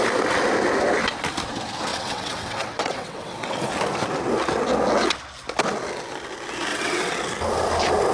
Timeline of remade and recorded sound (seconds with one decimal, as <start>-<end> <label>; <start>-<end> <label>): 0.0-1.9 recorded; 1.9-3.7 remade; 3.7-6.7 recorded; 6.7-7.2 remade; 7.2-8.1 recorded